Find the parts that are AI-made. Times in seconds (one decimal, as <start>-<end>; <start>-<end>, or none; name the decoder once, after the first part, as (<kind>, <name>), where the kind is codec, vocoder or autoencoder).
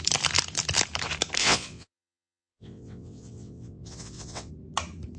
1.4-4.5 (vocoder, WaveNeXt)